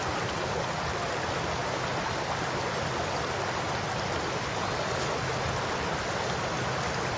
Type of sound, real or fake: real